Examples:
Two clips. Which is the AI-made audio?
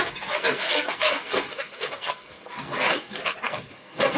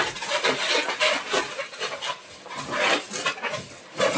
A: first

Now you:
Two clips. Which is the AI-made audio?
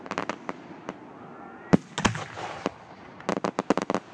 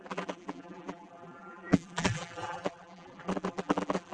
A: second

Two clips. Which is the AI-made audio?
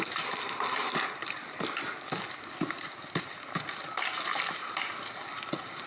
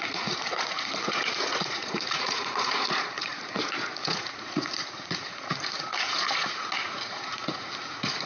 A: second